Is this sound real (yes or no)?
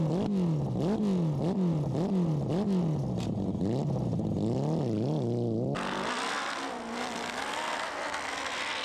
yes